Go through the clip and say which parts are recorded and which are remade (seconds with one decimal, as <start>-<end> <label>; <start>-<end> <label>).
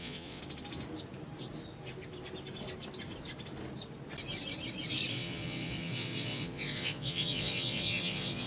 0.0-0.4 remade; 0.4-5.1 recorded; 5.1-8.5 remade